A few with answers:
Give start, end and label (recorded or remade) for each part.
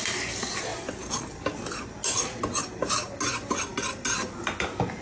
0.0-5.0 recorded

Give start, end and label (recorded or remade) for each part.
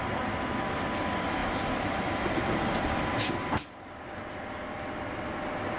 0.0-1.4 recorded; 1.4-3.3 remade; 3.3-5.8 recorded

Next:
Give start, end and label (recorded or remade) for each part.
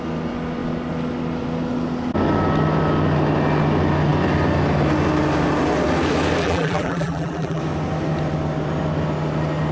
0.0-6.4 recorded; 6.4-7.6 remade; 7.6-9.7 recorded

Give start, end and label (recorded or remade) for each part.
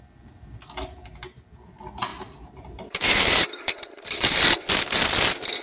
0.0-2.1 recorded; 2.1-4.6 remade; 4.6-5.6 recorded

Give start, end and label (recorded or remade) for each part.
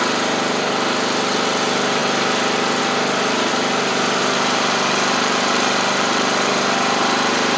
0.0-3.9 recorded; 3.9-7.6 remade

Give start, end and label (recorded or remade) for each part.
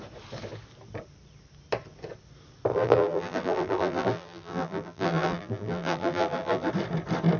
0.0-2.7 recorded; 2.7-6.7 remade; 6.7-7.4 recorded